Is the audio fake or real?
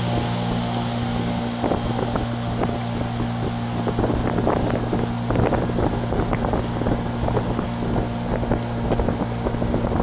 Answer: real